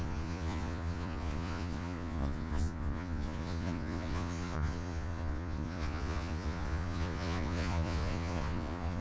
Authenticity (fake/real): fake